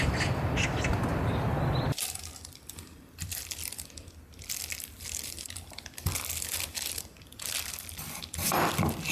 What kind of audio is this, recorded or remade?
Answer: remade